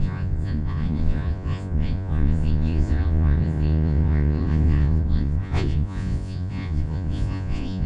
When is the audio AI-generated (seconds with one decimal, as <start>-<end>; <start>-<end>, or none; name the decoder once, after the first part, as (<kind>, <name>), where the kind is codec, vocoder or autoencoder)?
0.0-7.9 (vocoder, Vocos)